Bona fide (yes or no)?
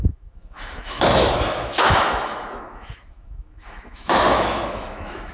no